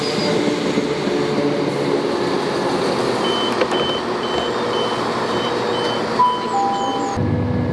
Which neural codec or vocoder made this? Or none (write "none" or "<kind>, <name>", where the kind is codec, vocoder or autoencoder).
none